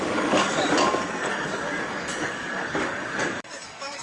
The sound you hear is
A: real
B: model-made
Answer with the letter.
B